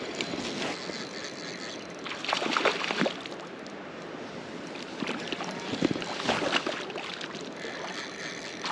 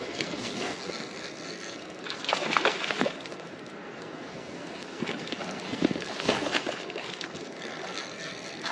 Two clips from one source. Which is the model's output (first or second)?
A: second